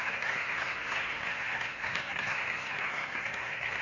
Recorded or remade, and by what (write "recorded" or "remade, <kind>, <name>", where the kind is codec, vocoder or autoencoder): remade, codec, SNAC